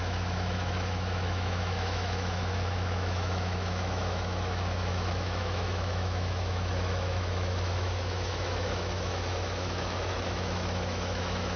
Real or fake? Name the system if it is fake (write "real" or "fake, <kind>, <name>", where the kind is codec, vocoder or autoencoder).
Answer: fake, autoencoder, DAC-VAE